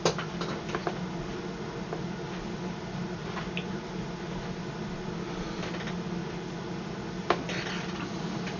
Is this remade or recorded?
recorded